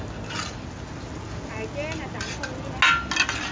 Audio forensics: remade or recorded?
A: recorded